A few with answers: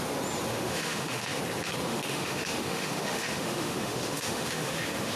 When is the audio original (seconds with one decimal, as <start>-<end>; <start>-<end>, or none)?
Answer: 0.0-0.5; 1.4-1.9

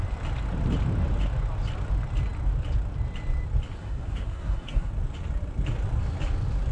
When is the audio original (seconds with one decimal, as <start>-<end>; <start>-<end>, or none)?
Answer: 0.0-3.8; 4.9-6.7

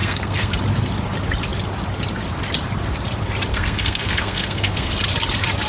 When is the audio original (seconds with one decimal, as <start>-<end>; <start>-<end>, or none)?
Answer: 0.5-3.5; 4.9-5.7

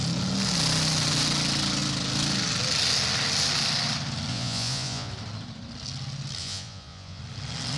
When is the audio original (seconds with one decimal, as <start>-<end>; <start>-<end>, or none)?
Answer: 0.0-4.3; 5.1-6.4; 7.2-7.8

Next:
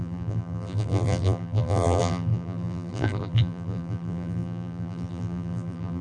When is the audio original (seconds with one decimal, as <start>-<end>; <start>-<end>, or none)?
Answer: none

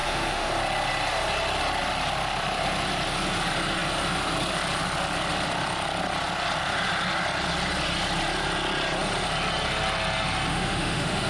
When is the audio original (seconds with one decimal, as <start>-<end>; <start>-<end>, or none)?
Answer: 0.5-10.5

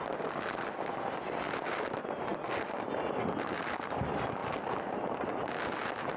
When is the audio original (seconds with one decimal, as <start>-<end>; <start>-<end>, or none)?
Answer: 0.0-6.2